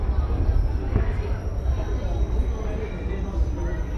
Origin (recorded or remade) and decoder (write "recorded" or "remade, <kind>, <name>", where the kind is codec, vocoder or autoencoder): recorded